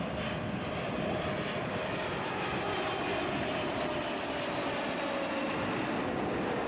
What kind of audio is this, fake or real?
real